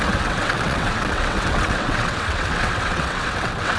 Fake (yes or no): yes